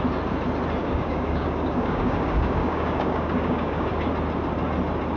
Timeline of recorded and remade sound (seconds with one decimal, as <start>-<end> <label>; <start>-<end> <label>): 0.0-0.8 recorded; 0.8-3.9 remade; 3.9-5.2 recorded